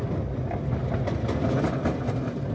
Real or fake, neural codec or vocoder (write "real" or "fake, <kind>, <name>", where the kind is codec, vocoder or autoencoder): real